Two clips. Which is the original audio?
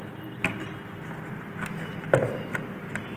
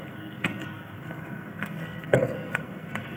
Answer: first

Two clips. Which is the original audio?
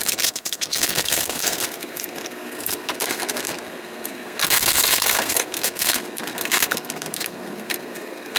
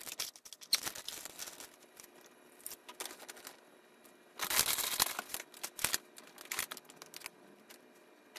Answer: second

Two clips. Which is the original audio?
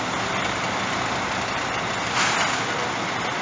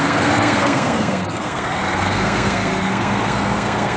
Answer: first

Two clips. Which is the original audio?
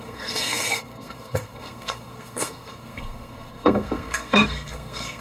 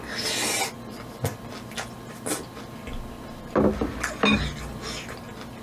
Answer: second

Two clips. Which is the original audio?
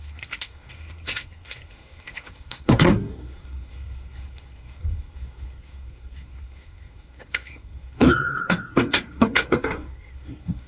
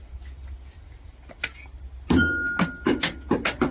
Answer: second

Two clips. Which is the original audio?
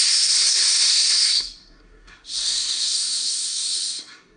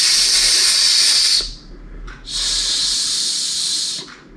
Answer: second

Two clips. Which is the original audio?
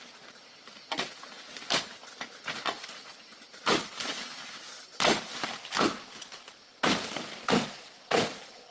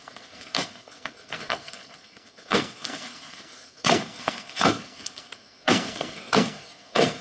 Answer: first